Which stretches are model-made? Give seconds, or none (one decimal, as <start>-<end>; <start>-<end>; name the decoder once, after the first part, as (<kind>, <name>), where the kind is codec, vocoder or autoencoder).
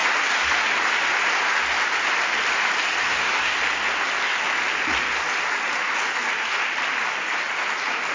3.0-3.6 (codec, SNAC)